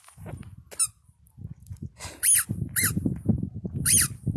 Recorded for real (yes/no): yes